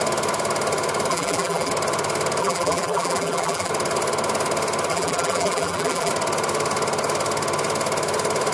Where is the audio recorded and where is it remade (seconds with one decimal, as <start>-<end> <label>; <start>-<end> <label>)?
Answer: 0.0-1.1 recorded; 1.1-1.7 remade; 1.7-2.4 recorded; 2.4-3.7 remade; 3.7-4.9 recorded; 4.9-6.1 remade; 6.1-8.5 recorded